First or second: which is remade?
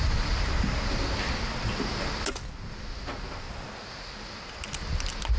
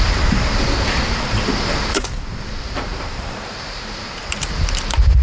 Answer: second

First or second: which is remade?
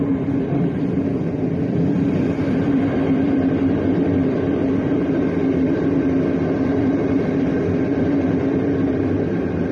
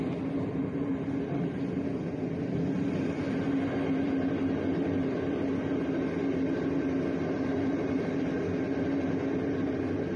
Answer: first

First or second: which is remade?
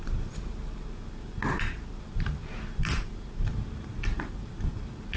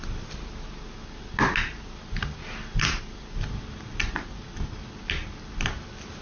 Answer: first